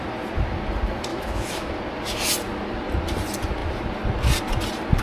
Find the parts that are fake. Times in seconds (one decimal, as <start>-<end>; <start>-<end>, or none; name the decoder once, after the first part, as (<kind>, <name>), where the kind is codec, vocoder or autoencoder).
1.1-1.8 (autoencoder, DAC-VAE)